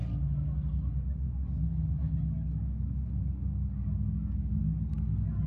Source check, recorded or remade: recorded